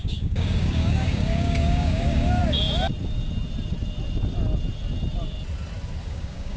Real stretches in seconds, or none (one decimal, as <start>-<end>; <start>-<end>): 2.4-6.0